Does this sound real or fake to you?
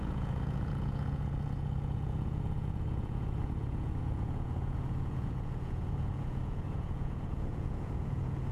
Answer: fake